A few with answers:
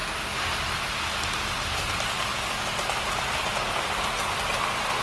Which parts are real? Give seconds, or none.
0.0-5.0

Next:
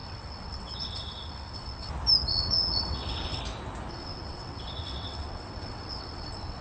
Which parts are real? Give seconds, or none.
1.9-2.3; 3.4-3.9